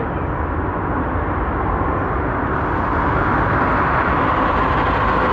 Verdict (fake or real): real